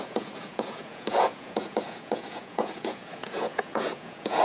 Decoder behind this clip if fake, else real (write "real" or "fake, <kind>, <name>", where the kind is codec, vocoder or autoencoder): fake, vocoder, Vocos